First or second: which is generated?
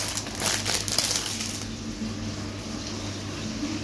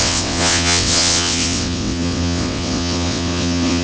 second